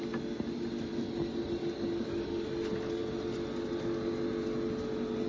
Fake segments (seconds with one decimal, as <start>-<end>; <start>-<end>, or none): none